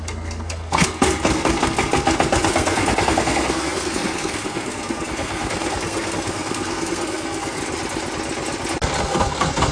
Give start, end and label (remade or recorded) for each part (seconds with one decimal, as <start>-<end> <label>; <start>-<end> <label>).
0.0-7.6 remade; 7.6-9.0 recorded; 9.0-9.7 remade